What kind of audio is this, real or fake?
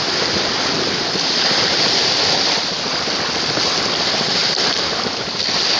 real